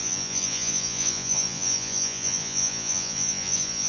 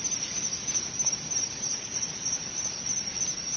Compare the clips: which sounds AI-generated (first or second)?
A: first